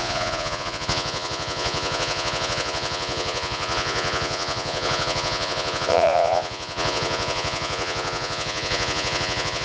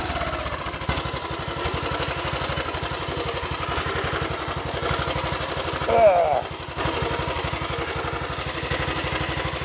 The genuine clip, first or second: second